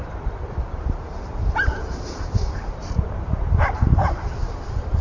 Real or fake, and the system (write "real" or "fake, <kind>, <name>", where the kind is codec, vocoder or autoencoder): fake, vocoder, BigVGAN v2